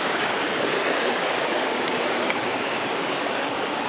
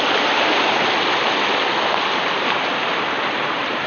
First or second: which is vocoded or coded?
first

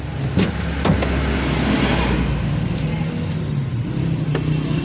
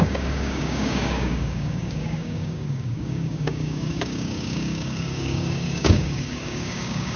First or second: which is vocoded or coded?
second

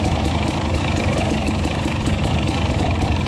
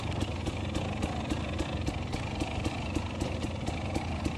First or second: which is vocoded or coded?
first